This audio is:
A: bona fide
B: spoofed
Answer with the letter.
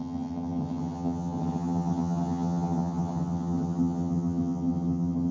B